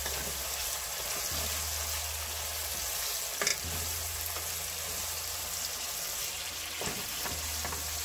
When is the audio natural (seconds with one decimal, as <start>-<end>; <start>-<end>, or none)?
0.0-8.0